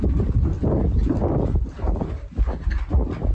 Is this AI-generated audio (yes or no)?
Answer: no